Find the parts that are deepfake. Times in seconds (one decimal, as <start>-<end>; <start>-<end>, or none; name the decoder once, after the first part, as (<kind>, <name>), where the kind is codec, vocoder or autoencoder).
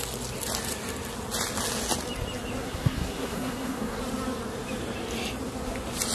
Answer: 2.6-4.0 (codec, SNAC)